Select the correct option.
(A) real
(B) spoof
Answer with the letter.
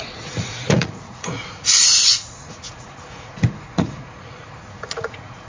B